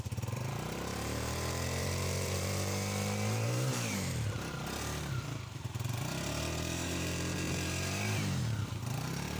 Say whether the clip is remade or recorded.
remade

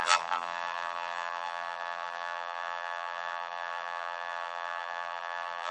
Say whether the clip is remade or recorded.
remade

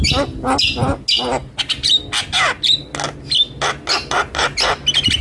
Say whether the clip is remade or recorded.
recorded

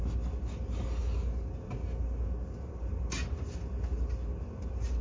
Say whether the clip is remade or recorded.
recorded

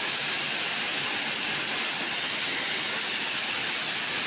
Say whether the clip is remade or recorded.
recorded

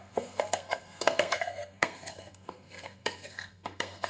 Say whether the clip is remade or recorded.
remade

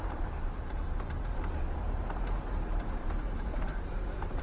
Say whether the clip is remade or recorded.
remade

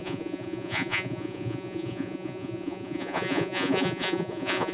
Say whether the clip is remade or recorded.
remade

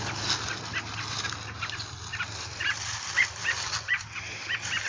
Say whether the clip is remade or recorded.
recorded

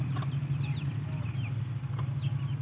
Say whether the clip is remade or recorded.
recorded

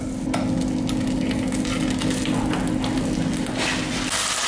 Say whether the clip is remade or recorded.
recorded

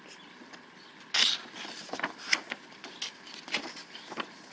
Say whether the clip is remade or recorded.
recorded